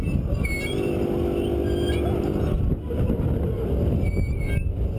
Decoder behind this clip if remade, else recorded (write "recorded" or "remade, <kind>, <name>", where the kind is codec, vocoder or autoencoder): recorded